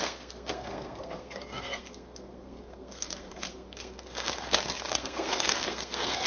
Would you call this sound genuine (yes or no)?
no